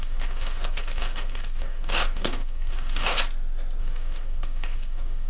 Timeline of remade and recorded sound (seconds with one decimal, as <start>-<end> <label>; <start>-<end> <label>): 0.0-3.2 remade; 3.2-3.8 recorded; 3.8-5.3 remade